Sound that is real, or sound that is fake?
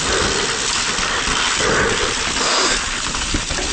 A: real